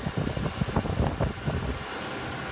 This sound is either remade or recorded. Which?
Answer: recorded